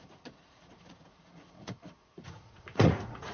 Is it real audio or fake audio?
fake